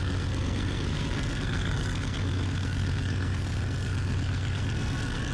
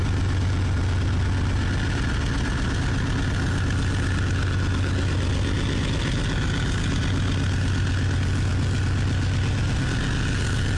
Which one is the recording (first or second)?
second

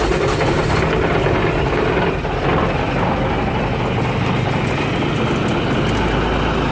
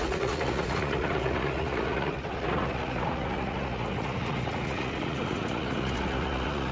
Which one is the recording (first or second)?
first